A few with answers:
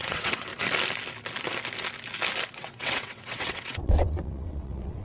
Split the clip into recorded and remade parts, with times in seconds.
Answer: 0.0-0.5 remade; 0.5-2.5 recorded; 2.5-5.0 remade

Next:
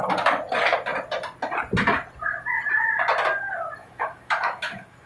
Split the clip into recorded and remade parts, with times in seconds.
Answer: 0.0-3.8 recorded; 3.8-5.1 remade

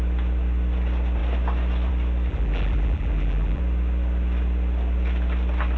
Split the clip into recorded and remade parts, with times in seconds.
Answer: 0.0-2.3 recorded; 2.3-3.6 remade; 3.6-5.8 recorded